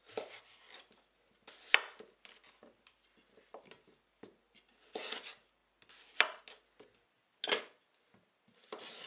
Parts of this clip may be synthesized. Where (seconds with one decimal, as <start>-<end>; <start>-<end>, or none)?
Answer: none